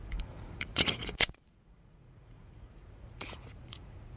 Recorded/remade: remade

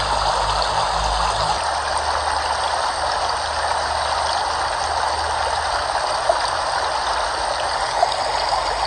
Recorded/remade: recorded